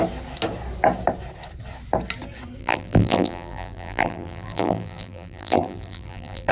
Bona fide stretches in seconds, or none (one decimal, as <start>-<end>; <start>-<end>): 0.0-2.6